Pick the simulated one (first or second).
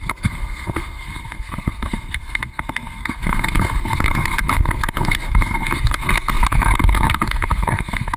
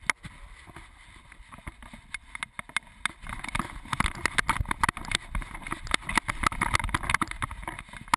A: first